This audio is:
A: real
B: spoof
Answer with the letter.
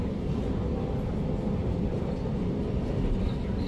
A